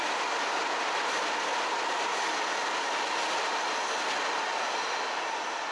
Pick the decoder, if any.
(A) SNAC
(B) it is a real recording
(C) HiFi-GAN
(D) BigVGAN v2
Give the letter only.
B